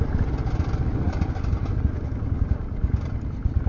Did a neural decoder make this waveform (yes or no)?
no